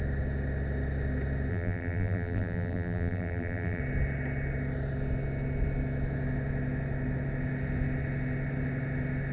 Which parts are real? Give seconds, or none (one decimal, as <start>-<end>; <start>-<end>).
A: 0.0-1.5; 3.8-9.3